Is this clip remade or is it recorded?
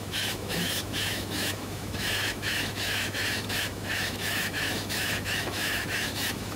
remade